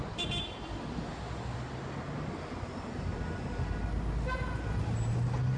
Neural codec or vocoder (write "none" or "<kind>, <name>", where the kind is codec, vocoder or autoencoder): none